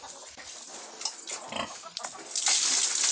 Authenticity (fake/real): real